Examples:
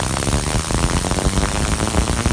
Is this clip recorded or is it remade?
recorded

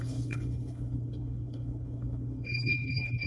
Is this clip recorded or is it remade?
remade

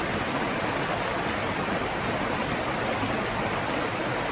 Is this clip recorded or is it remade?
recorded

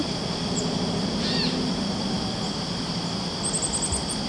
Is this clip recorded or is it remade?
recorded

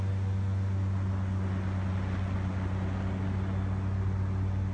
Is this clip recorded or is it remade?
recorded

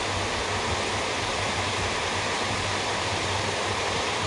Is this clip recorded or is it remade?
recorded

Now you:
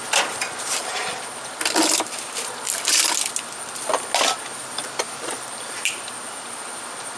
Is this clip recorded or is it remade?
recorded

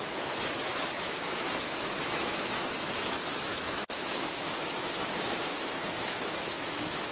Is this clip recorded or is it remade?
remade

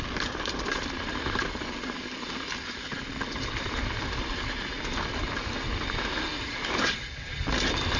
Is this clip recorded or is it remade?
recorded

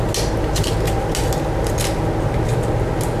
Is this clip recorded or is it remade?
recorded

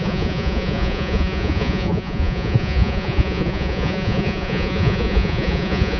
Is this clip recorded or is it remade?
remade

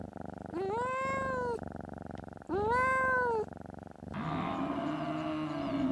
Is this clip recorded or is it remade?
recorded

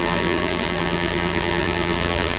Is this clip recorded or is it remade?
remade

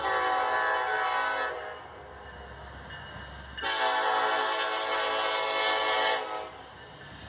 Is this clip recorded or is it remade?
recorded